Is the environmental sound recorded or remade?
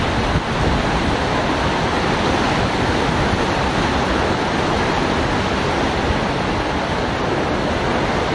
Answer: recorded